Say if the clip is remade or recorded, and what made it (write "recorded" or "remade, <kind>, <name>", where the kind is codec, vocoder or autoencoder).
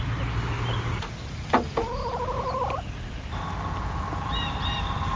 recorded